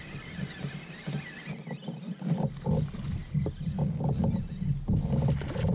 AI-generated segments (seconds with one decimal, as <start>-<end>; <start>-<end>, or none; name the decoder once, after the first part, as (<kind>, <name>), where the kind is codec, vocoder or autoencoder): 1.8-2.5 (vocoder, BigVGAN v2)